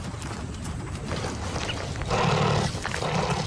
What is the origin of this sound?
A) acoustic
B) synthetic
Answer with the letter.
A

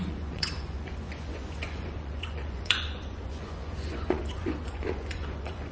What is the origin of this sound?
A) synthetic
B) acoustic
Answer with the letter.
A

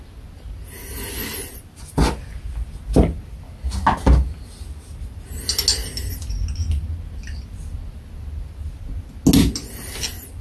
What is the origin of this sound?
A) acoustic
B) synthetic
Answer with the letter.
A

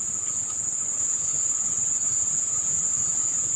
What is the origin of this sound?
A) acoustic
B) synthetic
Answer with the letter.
B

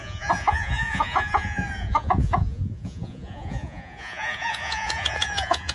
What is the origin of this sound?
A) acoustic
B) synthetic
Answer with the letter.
B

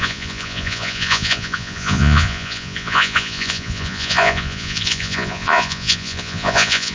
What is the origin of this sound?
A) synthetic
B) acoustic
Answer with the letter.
A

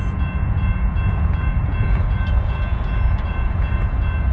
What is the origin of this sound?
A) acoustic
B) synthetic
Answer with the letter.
B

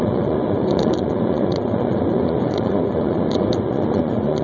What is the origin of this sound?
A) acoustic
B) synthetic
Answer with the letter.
B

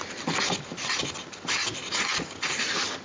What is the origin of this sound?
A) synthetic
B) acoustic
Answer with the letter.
B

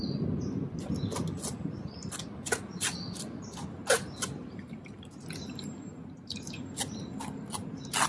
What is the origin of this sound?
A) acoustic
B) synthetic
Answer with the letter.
A